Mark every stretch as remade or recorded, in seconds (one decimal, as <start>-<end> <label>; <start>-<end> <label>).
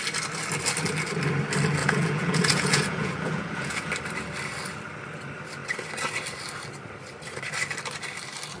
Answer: 0.0-1.8 recorded; 1.8-3.9 remade; 3.9-8.6 recorded